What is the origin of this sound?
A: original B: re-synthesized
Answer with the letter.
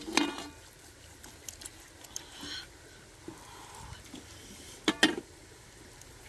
A